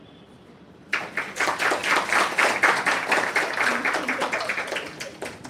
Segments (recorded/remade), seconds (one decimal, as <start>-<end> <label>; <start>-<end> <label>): 0.0-5.5 recorded